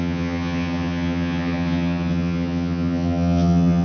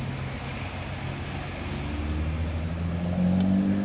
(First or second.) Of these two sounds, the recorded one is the second